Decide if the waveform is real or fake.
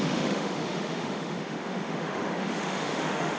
fake